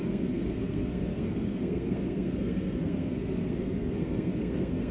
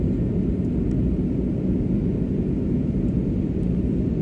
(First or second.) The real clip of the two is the second